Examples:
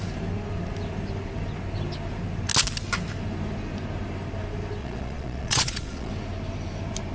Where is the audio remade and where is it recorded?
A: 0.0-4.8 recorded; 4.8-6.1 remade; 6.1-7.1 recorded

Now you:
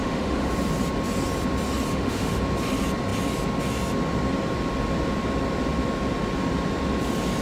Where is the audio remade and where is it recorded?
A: 0.0-0.5 remade; 0.5-1.9 recorded; 1.9-2.4 remade; 2.4-7.4 recorded

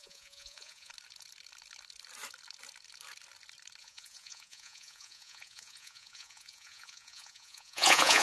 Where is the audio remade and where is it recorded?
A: 0.0-0.9 remade; 0.9-3.8 recorded; 3.8-8.2 remade

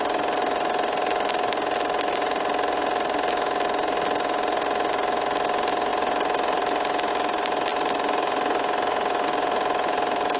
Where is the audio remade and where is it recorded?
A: 0.0-5.9 recorded; 5.9-7.1 remade; 7.1-7.7 recorded; 7.7-10.4 remade

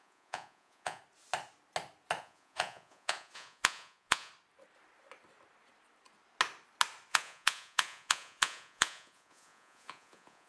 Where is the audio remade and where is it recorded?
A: 0.0-1.0 remade; 1.0-2.2 recorded; 2.2-4.3 remade; 4.3-7.1 recorded; 7.1-10.5 remade

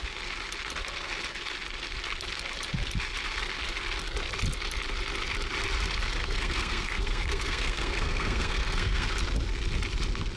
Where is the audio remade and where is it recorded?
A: 0.0-6.2 recorded; 6.2-9.1 remade; 9.1-10.4 recorded

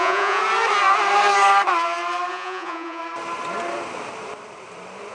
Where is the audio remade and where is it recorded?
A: 0.0-0.4 remade; 0.4-2.3 recorded; 2.3-3.0 remade; 3.0-5.1 recorded